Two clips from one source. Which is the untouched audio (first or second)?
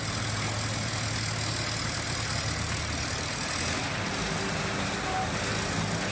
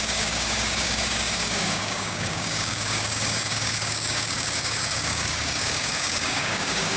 first